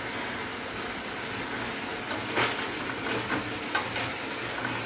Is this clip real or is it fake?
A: real